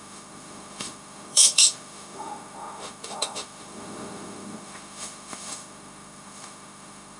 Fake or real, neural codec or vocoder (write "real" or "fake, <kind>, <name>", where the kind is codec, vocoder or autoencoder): fake, autoencoder, DAC-VAE